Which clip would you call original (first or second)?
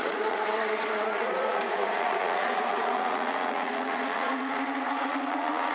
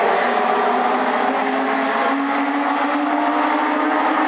second